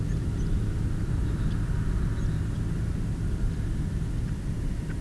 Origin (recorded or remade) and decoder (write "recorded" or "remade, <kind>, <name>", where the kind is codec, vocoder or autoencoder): recorded